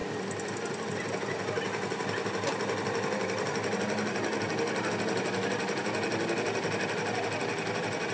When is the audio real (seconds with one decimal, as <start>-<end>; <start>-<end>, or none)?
0.0-8.1